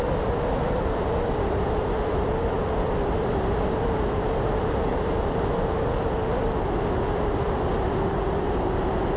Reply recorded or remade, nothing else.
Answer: recorded